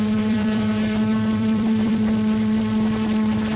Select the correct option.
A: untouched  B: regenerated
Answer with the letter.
B